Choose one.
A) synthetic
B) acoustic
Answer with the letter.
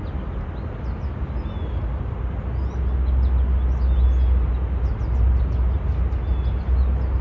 B